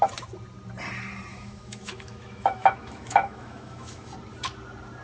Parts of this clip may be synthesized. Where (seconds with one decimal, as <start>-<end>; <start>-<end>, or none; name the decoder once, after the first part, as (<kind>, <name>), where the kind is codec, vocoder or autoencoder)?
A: 1.3-4.1 (autoencoder, DAC-VAE)